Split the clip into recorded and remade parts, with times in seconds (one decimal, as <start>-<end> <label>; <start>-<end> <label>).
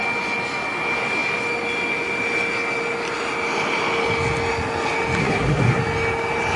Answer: 0.0-5.2 recorded; 5.2-5.8 remade; 5.8-6.6 recorded